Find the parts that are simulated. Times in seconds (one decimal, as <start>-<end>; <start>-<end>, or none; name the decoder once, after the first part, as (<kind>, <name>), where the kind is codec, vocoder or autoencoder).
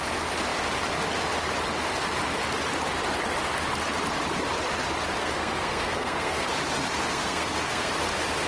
5.2-6.5 (codec, SNAC); 7.1-7.9